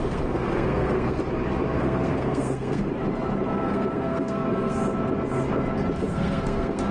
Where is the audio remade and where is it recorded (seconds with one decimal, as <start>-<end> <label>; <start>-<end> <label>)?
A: 0.0-1.2 remade; 1.2-1.8 recorded; 1.8-2.9 remade; 2.9-3.5 recorded; 3.5-4.8 remade; 4.8-6.1 recorded; 6.1-6.9 remade